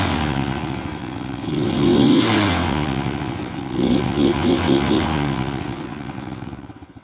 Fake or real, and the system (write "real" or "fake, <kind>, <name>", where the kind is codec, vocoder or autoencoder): fake, vocoder, WaveNeXt